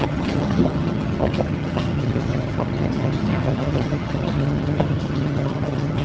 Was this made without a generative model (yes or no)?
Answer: no